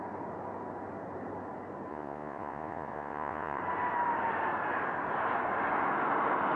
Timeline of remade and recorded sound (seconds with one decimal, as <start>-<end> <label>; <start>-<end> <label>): 0.0-1.9 recorded; 1.9-3.6 remade; 3.6-6.6 recorded